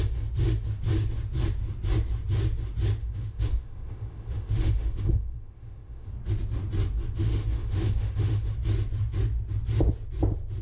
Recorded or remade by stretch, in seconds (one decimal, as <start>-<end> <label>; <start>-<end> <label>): 0.0-3.0 recorded; 3.0-6.1 remade; 6.1-7.2 recorded; 7.2-8.5 remade; 8.5-10.6 recorded